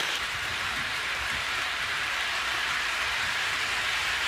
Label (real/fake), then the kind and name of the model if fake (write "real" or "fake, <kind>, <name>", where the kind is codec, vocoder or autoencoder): fake, vocoder, BigVGAN v2